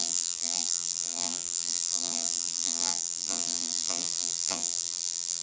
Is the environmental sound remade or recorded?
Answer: remade